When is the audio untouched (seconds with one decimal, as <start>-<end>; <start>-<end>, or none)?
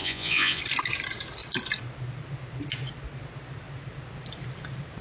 0.6-5.0